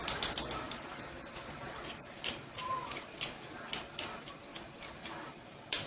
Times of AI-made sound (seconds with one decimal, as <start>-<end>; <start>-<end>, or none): 0.0-4.5; 5.2-5.9